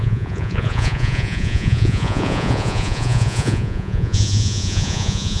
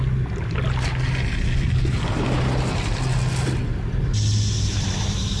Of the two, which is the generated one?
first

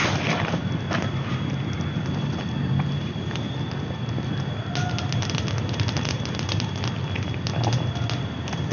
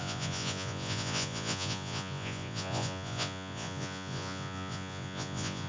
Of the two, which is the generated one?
second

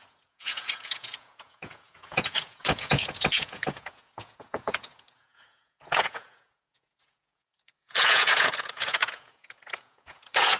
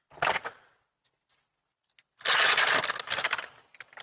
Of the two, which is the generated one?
first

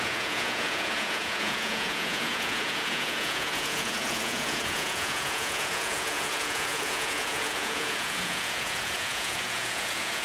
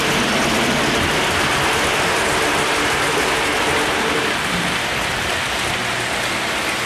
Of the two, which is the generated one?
first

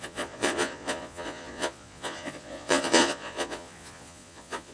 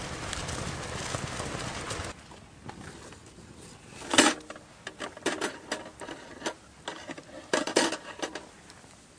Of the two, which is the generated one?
first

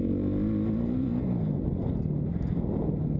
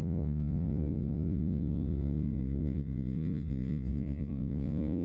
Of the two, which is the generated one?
second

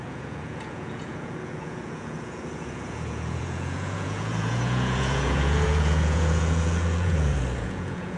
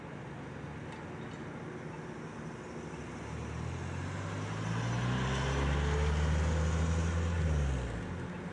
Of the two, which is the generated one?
first